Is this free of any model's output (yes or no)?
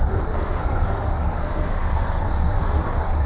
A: no